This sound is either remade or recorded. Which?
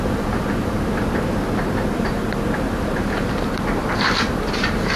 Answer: remade